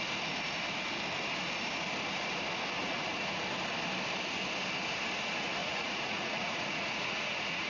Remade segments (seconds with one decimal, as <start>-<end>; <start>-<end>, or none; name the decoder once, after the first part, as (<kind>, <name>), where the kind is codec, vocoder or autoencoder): 2.8-3.4 (vocoder, Vocos); 5.6-7.7